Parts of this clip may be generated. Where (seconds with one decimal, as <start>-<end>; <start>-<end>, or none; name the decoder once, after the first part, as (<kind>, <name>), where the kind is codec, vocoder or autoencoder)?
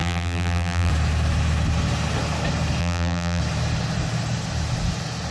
0.0-0.9 (vocoder, BigVGAN v2); 2.8-3.4